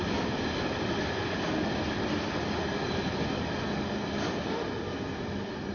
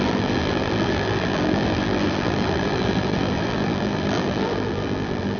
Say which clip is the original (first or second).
first